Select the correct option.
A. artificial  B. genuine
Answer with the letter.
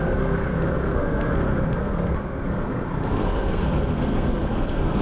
A